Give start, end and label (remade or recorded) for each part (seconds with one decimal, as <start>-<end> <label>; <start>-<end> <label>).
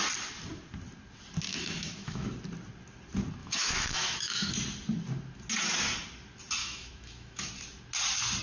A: 0.0-1.5 recorded; 1.5-2.3 remade; 2.3-3.4 recorded; 3.4-4.5 remade; 4.5-6.6 recorded; 6.6-7.5 remade; 7.5-8.4 recorded